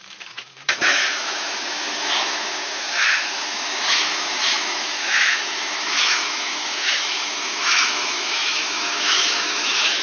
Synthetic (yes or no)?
yes